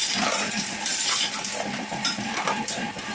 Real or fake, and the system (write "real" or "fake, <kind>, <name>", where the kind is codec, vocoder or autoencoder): fake, vocoder, BigVGAN v2